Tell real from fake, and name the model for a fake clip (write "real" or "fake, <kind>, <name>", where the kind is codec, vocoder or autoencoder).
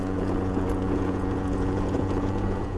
fake, vocoder, Vocos